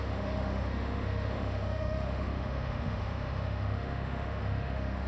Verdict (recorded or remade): remade